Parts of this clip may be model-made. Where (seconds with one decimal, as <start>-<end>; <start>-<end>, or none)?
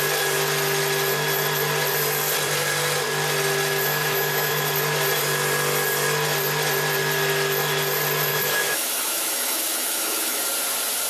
3.9-4.6; 8.3-10.4